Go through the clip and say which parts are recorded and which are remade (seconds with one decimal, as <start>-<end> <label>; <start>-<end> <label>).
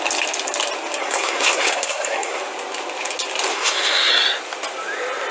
0.0-1.0 recorded; 1.0-2.4 remade; 2.4-3.5 recorded; 3.5-4.1 remade; 4.1-5.3 recorded